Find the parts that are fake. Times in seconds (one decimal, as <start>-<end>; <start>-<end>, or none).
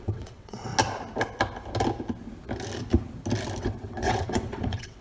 0.0-0.7; 3.6-5.0